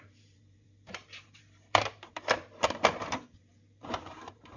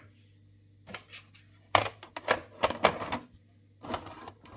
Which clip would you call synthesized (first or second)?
first